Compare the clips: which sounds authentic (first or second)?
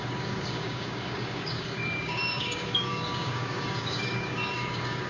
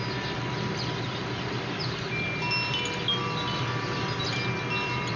second